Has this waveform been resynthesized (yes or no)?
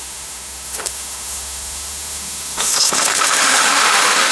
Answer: yes